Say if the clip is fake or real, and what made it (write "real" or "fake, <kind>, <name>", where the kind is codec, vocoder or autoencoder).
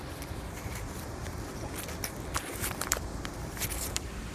fake, vocoder, BigVGAN v2